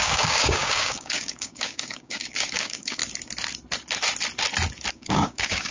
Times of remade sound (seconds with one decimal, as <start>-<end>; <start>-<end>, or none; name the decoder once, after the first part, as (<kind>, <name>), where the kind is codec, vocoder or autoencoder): 0.0-3.0 (codec, DAC); 4.9-5.7